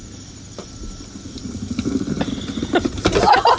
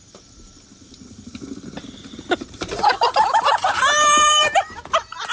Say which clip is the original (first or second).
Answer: first